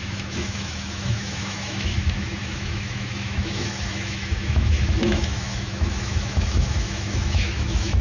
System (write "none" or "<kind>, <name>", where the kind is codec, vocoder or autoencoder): autoencoder, DAC-VAE